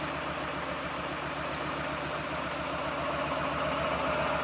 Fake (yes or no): no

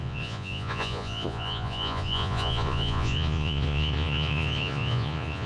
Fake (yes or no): yes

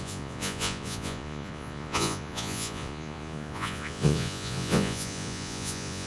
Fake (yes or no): yes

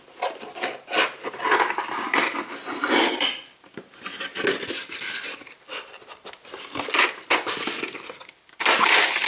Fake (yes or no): no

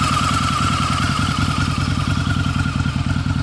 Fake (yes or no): no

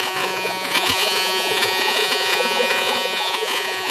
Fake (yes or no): yes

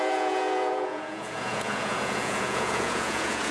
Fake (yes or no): yes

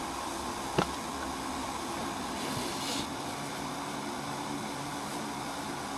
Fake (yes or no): no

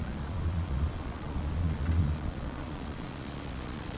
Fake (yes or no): yes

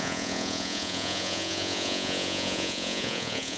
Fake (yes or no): yes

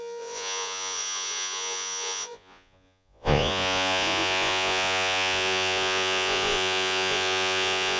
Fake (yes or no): yes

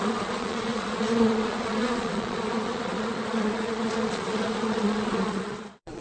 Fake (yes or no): yes